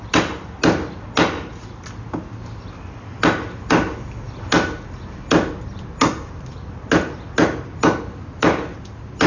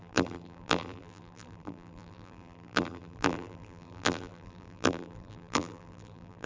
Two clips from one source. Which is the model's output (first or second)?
second